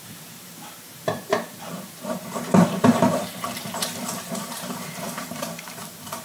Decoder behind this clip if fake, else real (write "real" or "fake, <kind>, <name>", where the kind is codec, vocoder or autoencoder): fake, vocoder, BigVGAN v2